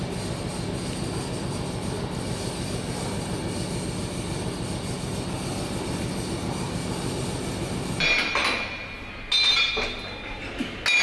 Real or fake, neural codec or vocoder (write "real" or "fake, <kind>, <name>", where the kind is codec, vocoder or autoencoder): real